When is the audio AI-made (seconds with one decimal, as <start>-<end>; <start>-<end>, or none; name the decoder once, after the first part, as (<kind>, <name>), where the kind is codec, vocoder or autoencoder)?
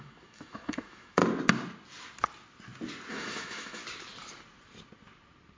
0.0-1.2 (autoencoder, DAC-VAE); 3.1-3.8